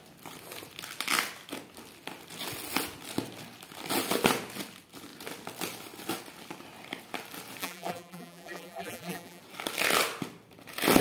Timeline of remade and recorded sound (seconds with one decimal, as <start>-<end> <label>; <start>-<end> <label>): 0.0-7.6 recorded; 7.6-9.4 remade; 9.4-11.0 recorded